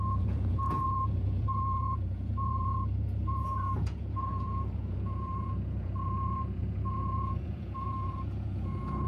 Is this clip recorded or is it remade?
remade